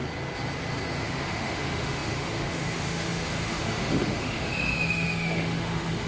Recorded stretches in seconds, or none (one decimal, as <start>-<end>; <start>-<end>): 0.0-1.0